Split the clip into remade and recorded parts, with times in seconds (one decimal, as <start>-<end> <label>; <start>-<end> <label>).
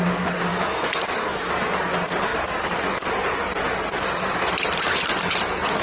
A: 0.0-0.5 recorded; 0.5-1.5 remade; 1.5-5.8 recorded